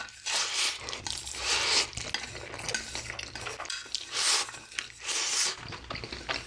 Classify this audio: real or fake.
real